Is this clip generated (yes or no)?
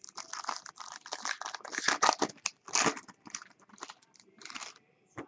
no